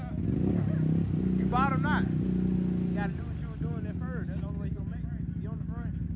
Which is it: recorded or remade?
recorded